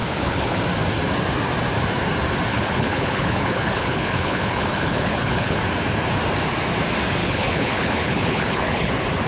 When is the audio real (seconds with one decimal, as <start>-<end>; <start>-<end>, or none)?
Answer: 0.6-2.5; 5.6-7.2; 8.9-9.3